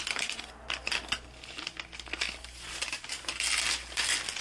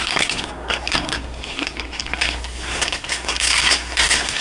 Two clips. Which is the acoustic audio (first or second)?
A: first